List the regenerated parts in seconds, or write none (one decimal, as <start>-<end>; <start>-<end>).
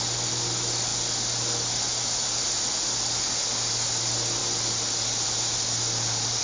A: none